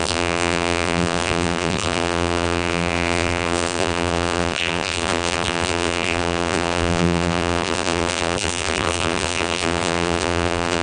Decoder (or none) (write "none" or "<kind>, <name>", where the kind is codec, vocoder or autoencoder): vocoder, BigVGAN v2